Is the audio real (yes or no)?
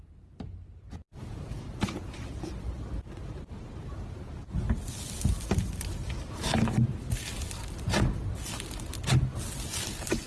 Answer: yes